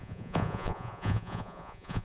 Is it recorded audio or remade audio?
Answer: remade